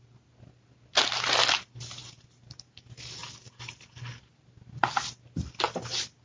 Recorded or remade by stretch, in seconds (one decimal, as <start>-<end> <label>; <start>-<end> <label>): 0.0-6.2 recorded